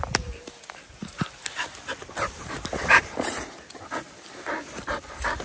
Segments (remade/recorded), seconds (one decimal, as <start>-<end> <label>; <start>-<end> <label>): 0.0-5.4 recorded